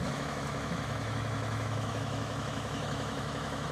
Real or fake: fake